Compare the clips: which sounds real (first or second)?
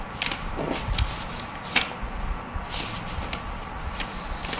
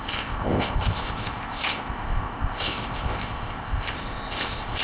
first